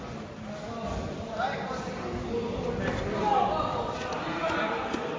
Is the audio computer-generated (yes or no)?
no